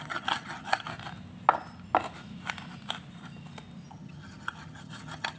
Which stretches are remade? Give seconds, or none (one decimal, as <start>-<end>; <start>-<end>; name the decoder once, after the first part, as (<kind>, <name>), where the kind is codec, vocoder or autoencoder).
0.0-0.9 (vocoder, HiFi-GAN); 3.9-5.4